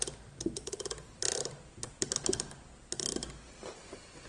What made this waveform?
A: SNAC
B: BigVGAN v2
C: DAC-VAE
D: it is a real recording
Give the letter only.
D